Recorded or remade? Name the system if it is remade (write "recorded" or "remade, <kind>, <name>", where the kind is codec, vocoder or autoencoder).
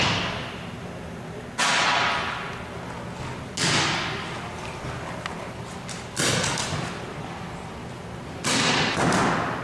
recorded